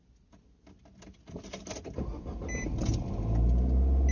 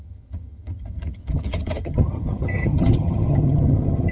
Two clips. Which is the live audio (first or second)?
first